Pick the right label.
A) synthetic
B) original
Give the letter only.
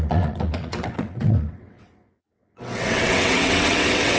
A